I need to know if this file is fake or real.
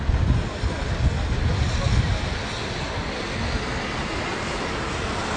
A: real